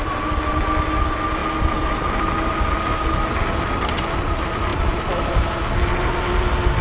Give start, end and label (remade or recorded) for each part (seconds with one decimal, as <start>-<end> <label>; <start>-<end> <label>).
0.0-6.8 recorded